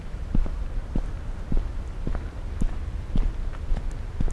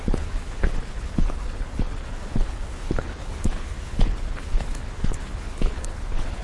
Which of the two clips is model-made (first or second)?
second